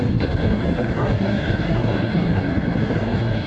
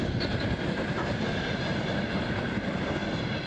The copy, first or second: first